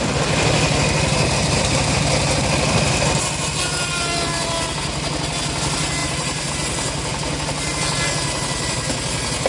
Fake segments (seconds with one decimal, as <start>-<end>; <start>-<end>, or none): 6.0-6.5